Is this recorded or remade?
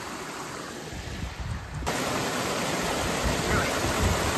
recorded